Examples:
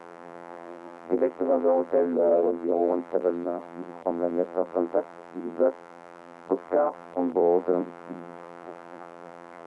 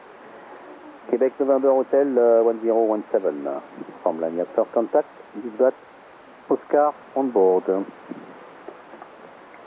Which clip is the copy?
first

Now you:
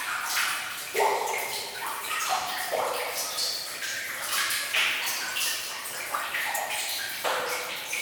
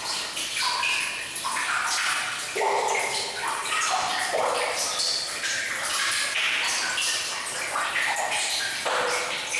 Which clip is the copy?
first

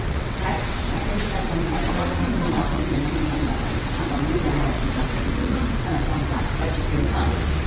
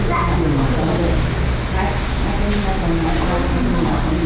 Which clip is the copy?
first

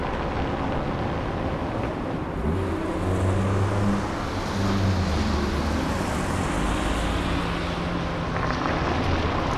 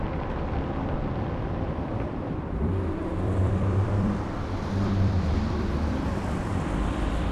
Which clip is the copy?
second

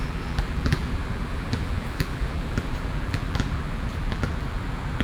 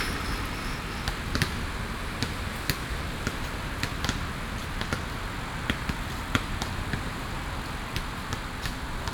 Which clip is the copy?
first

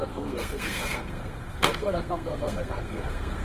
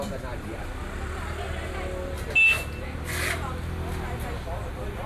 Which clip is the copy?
first